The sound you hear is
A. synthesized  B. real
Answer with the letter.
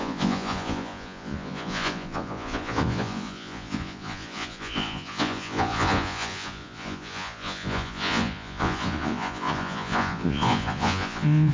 A